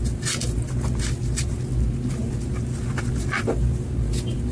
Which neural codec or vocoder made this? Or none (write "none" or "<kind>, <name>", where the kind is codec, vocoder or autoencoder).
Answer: none